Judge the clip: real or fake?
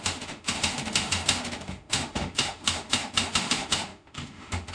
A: fake